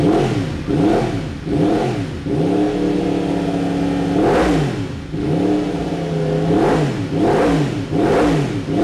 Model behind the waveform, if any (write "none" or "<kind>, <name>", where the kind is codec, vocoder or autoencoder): none